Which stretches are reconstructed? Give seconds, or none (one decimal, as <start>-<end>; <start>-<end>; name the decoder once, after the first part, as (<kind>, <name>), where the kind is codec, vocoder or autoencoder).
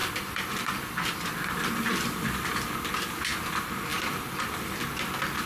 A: 0.0-2.7 (vocoder, BigVGAN v2); 3.9-4.8